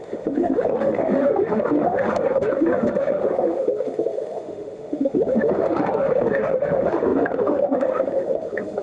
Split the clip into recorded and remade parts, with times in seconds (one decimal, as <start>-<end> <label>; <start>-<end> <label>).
0.0-8.8 remade

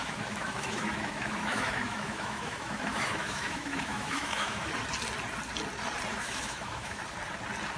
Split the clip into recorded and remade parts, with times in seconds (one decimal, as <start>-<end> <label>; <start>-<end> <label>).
0.0-4.7 remade; 4.7-6.1 recorded; 6.1-7.0 remade; 7.0-7.8 recorded

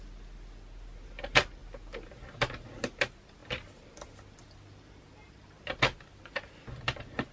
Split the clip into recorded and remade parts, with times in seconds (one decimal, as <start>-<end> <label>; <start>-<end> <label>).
0.0-7.3 recorded

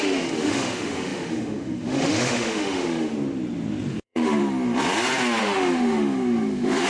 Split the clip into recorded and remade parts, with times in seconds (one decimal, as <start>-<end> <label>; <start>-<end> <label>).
0.0-3.1 remade; 3.1-3.9 recorded; 3.9-4.4 remade; 4.4-5.4 recorded; 5.4-6.9 remade

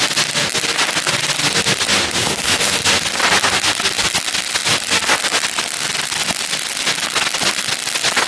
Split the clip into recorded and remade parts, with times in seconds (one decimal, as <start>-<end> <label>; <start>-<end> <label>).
0.0-2.2 recorded; 2.2-2.8 remade; 2.8-8.3 recorded